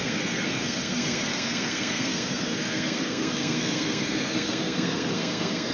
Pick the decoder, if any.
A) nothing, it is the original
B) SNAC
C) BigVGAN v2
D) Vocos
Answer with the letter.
B